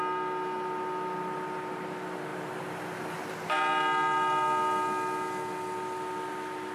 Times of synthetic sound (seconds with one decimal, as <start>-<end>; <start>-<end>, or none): none